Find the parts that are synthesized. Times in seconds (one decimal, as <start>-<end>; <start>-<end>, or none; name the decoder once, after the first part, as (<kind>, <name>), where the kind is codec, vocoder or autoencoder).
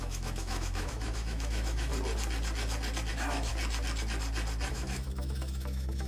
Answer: 0.0-1.9 (autoencoder, DAC-VAE); 3.1-3.5; 4.7-6.1